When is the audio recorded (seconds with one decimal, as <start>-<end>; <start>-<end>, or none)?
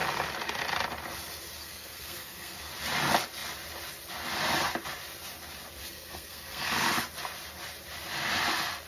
0.0-1.6; 2.7-5.8; 6.9-8.9